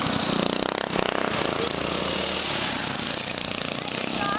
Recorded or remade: recorded